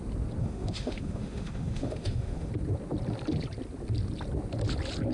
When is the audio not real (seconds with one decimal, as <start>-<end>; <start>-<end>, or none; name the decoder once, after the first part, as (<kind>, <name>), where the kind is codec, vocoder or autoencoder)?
0.4-2.5 (autoencoder, DAC-VAE)